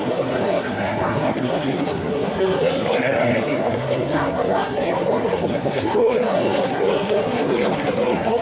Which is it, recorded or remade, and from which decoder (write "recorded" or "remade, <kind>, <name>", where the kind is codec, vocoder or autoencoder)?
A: remade, codec, SNAC